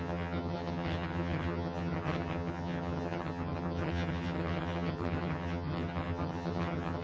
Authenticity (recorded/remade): remade